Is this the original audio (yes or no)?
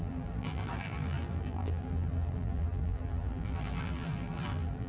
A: no